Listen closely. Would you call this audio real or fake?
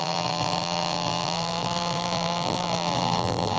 fake